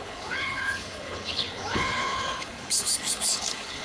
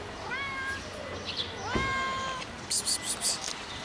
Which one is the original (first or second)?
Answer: second